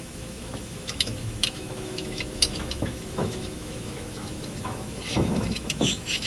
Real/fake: fake